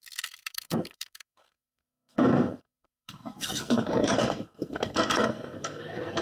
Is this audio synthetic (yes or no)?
yes